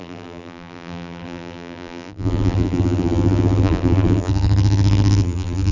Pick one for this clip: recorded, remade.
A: remade